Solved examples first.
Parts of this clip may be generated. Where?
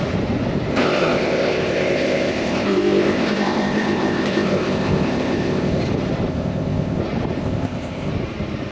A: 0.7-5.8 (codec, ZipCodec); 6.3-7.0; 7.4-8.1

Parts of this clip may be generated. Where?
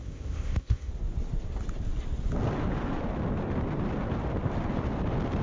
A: 0.0-0.9 (codec, ZipCodec)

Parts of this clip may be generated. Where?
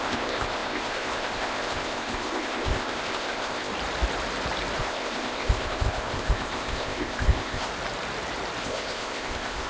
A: 0.0-3.7 (codec, ZipCodec); 4.8-7.7; 8.6-9.7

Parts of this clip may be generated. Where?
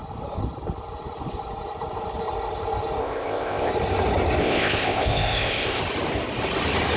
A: 3.0-3.7 (codec, ZipCodec); 4.4-5.8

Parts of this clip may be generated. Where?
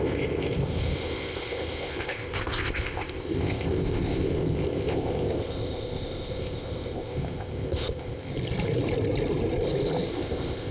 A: 0.0-8.3 (codec, ZipCodec); 10.1-10.7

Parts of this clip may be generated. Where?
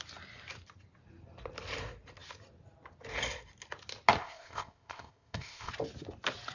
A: 4.2-5.7 (codec, ZipCodec)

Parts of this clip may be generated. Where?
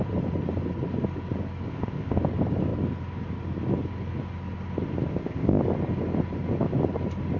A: 1.7-2.2 (codec, ZipCodec); 5.1-5.6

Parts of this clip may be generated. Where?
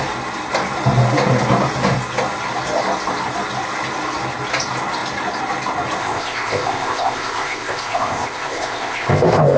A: 6.0-9.6 (codec, ZipCodec)